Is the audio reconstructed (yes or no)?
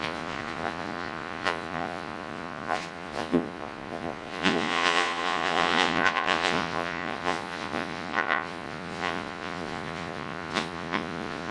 yes